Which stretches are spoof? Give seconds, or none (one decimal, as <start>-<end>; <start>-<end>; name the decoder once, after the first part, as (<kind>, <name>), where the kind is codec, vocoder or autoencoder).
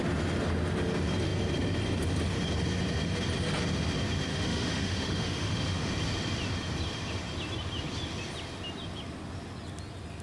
4.3-5.9 (autoencoder, DAC-VAE)